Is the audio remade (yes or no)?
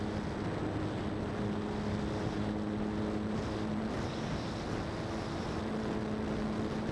no